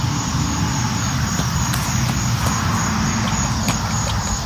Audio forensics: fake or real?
real